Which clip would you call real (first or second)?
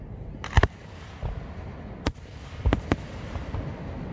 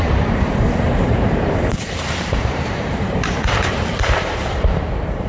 first